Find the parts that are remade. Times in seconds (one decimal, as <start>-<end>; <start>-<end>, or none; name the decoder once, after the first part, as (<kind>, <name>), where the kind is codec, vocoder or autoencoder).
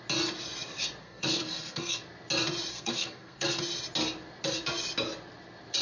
1.0-2.0 (codec, SNAC); 2.7-3.6